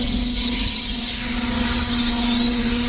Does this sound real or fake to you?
real